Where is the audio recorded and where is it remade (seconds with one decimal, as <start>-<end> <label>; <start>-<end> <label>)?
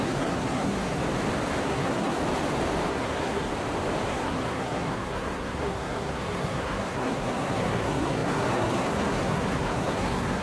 0.0-1.0 remade; 1.0-1.6 recorded; 1.6-2.2 remade; 2.2-2.9 recorded; 2.9-3.5 remade; 3.5-4.1 recorded; 4.1-10.4 remade